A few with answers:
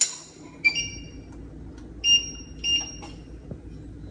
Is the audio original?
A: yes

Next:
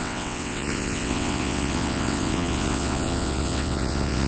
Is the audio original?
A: no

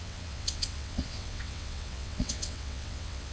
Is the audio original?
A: no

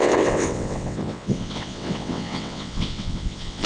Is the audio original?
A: no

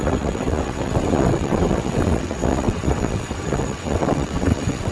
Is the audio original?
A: no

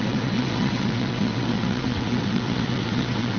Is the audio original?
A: no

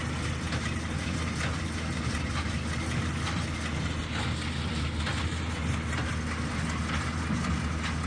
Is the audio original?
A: yes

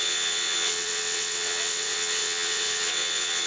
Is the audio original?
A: no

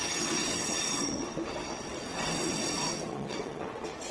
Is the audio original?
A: no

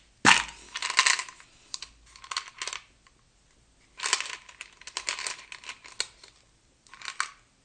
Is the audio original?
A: yes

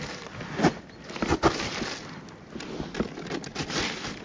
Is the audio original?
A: yes